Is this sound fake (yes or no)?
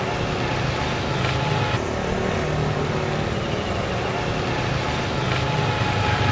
no